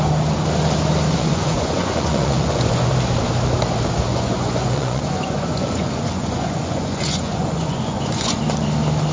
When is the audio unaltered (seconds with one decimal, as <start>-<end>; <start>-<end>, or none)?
0.0-1.1; 2.9-4.1; 8.4-9.1

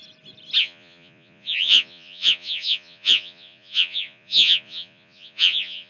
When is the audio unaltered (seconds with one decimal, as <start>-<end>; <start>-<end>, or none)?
0.0-0.6